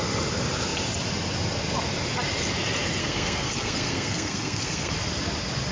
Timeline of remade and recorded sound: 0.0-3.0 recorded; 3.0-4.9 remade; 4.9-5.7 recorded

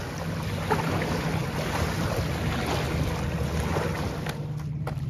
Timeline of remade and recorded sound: 0.0-5.1 recorded

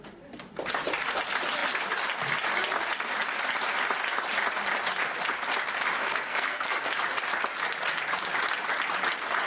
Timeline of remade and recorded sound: 0.0-6.0 recorded; 6.0-6.9 remade; 6.9-9.5 recorded

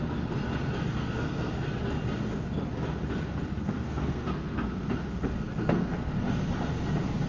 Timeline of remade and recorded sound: 0.0-0.9 recorded; 0.9-1.5 remade; 1.5-3.6 recorded; 3.6-6.1 remade; 6.1-7.3 recorded